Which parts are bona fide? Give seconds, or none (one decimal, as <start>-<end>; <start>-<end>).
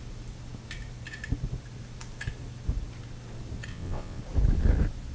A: 0.0-3.7; 4.2-5.1